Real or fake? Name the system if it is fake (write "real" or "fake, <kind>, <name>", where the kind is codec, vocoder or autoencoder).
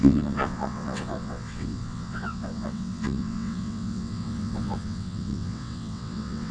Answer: fake, vocoder, WaveNeXt